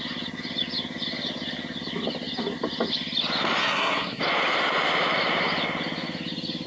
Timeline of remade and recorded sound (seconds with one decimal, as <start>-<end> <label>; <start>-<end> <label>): 0.0-3.6 recorded; 3.6-4.2 remade; 4.2-6.7 recorded